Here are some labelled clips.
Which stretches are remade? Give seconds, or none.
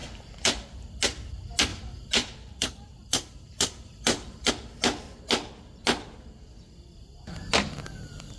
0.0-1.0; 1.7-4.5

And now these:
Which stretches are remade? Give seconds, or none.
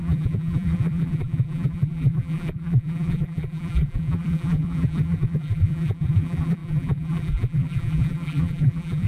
0.0-9.1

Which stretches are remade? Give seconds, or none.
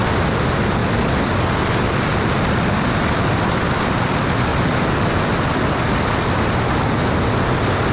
4.5-6.8